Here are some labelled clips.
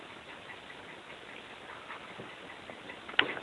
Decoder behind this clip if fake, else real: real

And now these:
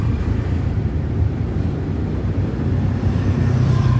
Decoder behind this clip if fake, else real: fake, vocoder, BigVGAN v2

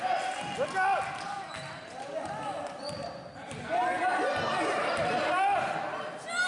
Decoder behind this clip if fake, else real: real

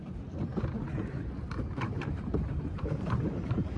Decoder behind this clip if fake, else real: fake, vocoder, BigVGAN v2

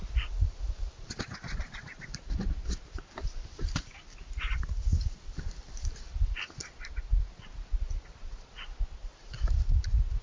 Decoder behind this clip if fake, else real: real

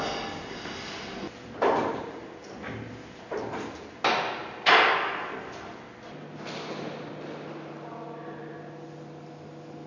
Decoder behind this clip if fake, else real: real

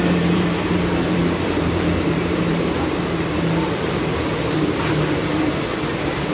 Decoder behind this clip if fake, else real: fake, vocoder, BigVGAN v2